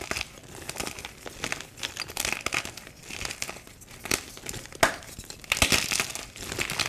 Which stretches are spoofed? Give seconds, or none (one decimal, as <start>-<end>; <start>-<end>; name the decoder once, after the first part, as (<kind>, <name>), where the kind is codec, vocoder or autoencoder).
none